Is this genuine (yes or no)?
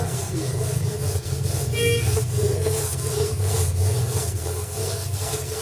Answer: no